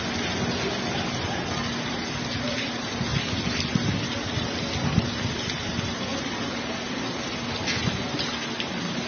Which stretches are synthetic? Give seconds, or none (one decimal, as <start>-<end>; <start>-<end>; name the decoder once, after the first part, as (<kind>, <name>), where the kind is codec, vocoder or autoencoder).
none